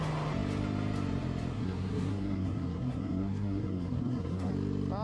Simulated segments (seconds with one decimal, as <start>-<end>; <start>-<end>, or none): 1.5-4.5